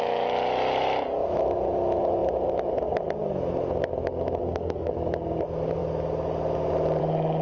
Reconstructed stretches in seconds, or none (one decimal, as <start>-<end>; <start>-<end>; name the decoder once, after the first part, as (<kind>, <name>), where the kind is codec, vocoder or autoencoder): 4.4-4.9 (codec, SNAC)